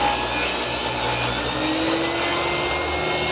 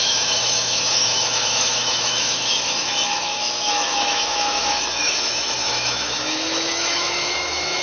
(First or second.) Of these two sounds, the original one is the first